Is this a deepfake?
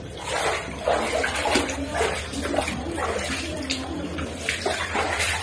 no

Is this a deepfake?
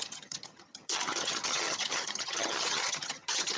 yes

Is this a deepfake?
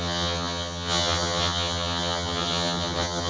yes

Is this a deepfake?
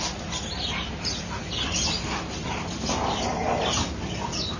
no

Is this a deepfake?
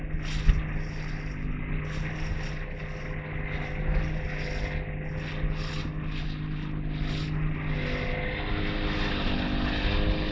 no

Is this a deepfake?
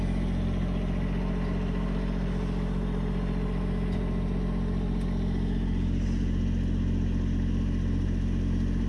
no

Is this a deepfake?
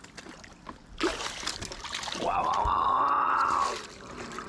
no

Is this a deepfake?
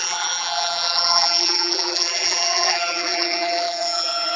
yes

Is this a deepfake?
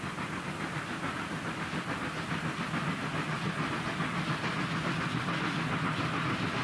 no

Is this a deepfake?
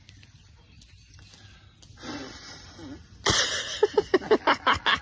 no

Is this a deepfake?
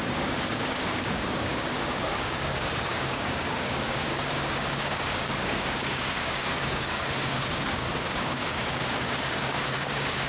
yes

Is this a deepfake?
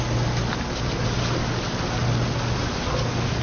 no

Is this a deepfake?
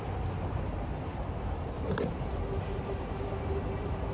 no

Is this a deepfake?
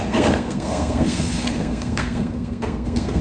yes